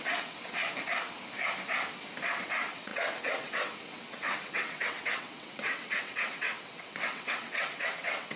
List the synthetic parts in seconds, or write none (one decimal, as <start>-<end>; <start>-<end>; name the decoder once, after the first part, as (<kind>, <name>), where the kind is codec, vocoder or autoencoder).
0.0-0.6 (vocoder, WaveNeXt); 2.3-8.4